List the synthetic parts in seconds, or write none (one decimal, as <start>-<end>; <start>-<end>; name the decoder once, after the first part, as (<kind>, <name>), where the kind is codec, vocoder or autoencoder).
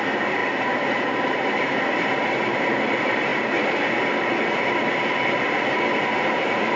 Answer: none